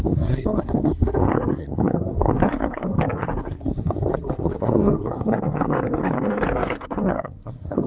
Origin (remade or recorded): remade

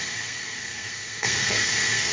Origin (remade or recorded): remade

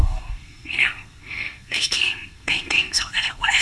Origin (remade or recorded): remade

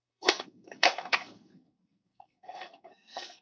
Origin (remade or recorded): remade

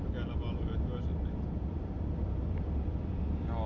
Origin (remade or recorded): recorded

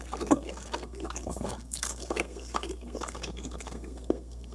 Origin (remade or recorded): remade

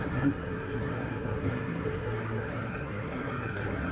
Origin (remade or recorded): remade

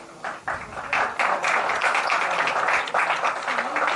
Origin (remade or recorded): recorded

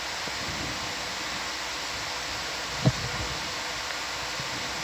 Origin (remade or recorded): recorded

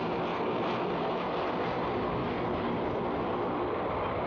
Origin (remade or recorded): recorded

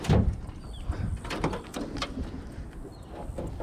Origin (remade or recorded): recorded